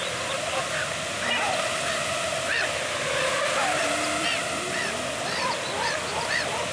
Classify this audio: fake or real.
real